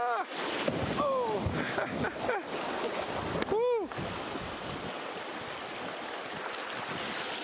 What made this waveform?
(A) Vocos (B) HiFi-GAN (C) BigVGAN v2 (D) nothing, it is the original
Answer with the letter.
D